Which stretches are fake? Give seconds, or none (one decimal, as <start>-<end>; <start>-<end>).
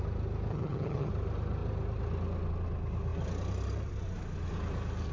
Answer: 0.5-1.1